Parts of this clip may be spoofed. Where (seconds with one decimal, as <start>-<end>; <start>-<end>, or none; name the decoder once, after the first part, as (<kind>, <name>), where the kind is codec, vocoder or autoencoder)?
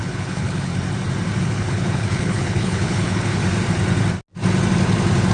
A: 0.0-0.7 (codec, HILCodec); 1.4-3.4